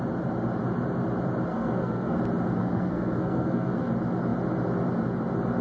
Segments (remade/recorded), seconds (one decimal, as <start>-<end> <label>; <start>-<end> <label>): 0.0-1.5 recorded; 1.5-2.2 remade; 2.2-2.6 recorded; 2.6-3.9 remade; 3.9-5.6 recorded